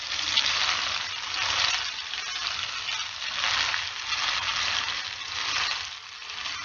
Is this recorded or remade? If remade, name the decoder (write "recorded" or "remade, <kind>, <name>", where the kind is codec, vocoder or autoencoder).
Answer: recorded